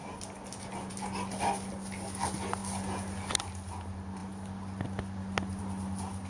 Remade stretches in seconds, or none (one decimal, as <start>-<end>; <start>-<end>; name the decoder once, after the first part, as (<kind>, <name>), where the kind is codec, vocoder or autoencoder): none